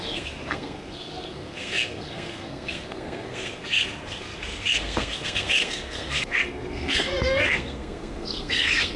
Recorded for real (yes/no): no